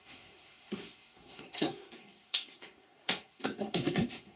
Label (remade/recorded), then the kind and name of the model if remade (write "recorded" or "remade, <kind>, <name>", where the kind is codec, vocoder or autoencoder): remade, codec, SNAC